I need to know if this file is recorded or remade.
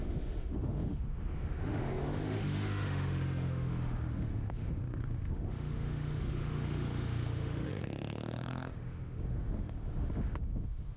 remade